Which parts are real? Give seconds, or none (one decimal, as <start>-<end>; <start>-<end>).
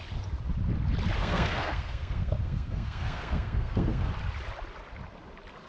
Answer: 0.0-1.2; 4.1-5.7